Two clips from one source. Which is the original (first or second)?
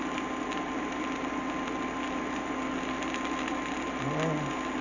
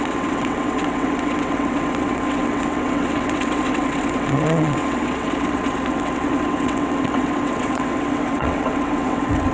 first